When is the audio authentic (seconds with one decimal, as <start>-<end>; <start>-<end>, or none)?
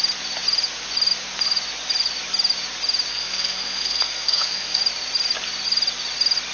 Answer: 0.0-3.1; 4.8-6.5